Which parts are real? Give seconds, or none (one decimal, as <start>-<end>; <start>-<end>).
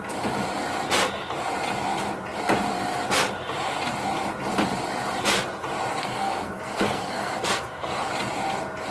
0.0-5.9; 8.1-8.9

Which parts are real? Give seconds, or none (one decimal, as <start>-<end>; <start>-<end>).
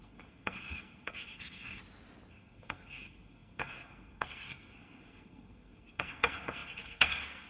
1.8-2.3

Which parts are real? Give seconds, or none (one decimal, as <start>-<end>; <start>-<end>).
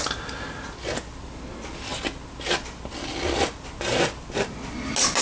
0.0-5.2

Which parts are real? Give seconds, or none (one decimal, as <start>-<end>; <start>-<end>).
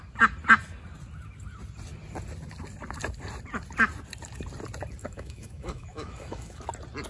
0.0-5.0; 6.6-7.1